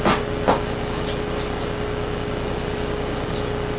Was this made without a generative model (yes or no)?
yes